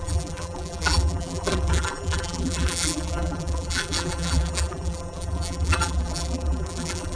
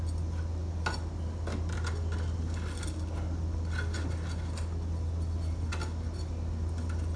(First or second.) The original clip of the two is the second